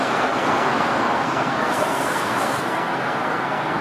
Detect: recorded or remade remade